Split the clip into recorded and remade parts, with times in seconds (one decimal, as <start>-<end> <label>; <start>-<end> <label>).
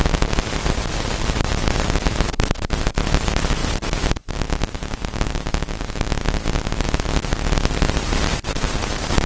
0.0-9.3 recorded